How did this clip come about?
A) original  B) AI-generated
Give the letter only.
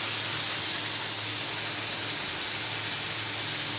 A